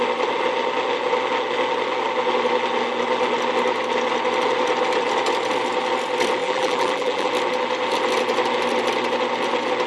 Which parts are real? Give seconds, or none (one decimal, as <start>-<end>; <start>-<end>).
0.0-6.4; 7.3-9.9